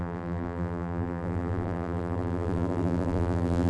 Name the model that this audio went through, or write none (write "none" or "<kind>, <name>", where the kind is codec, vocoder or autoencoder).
vocoder, BigVGAN v2